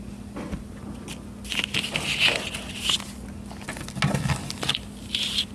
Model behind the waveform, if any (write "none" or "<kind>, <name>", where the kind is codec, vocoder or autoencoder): none